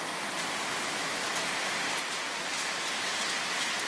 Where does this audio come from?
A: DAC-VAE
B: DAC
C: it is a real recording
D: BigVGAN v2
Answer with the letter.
C